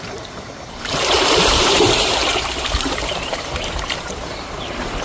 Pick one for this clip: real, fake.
fake